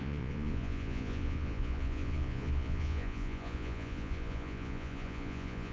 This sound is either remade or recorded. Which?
remade